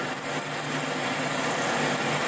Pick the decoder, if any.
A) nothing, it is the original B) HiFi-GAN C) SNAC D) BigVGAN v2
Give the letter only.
A